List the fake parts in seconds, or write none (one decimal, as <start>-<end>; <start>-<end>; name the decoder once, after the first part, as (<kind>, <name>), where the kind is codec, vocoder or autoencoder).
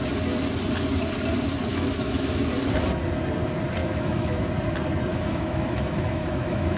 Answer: 1.7-2.4 (autoencoder, DAC-VAE); 3.8-4.5; 5.1-6.8